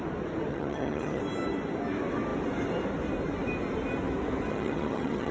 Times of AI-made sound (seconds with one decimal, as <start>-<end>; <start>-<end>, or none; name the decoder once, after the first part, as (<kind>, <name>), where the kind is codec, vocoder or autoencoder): 0.5-1.2 (vocoder, HiFi-GAN); 4.5-5.3